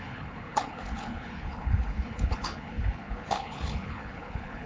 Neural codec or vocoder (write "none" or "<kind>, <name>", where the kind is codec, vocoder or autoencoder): codec, HILCodec